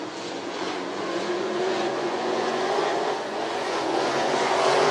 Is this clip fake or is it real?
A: fake